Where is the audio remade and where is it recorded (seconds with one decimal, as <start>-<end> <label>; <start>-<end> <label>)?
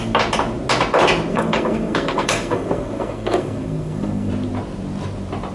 0.0-1.3 recorded; 1.3-4.3 remade; 4.3-5.5 recorded